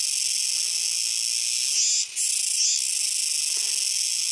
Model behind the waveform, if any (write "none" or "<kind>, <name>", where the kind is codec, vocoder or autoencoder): none